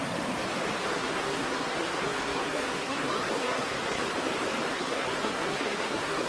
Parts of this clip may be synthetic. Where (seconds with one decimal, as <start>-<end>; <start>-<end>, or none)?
0.9-4.0; 4.7-6.3